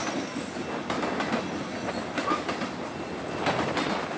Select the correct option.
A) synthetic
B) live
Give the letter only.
B